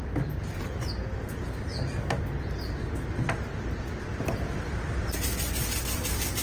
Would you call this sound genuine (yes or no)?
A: yes